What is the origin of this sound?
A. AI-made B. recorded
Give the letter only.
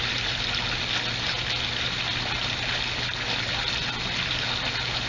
B